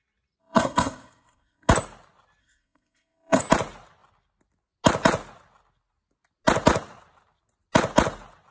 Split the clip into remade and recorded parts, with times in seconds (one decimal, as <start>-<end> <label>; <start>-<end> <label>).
0.0-0.4 recorded; 0.4-1.7 remade; 1.7-2.4 recorded; 2.4-3.4 remade; 3.4-8.5 recorded